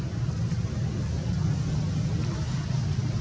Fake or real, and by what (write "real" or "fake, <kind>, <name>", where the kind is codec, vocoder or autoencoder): real